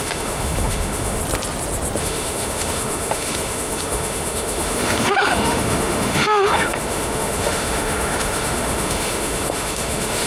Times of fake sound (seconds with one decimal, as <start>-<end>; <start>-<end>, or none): 0.0-1.2; 2.0-10.3